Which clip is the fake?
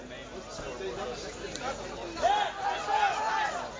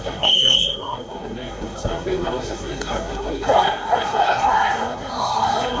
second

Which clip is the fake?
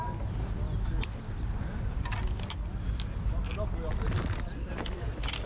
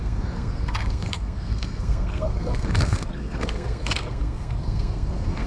second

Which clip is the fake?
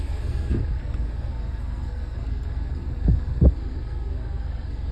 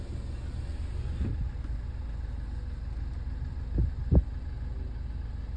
first